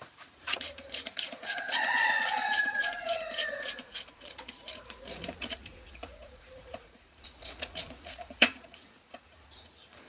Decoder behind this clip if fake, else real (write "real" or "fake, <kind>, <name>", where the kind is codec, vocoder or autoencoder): fake, vocoder, Vocos